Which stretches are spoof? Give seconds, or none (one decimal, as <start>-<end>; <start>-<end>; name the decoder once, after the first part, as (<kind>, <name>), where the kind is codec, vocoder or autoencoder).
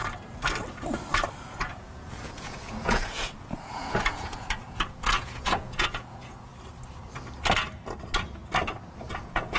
1.4-6.5 (vocoder, Vocos); 9.1-9.6